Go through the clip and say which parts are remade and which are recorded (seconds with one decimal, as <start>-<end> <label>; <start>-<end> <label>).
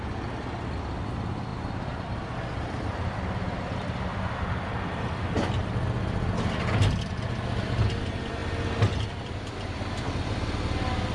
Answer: 0.0-8.4 remade; 8.4-9.1 recorded; 9.1-11.1 remade